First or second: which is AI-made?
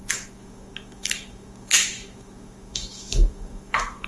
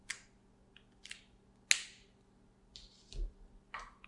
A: first